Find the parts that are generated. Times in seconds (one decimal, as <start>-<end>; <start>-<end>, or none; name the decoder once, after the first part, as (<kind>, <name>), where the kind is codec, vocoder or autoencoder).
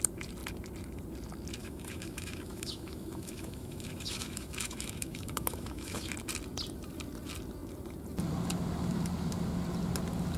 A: 1.6-6.1 (autoencoder, DAC-VAE)